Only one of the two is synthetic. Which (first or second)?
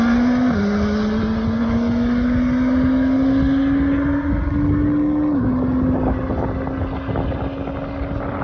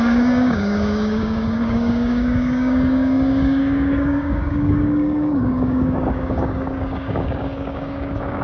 second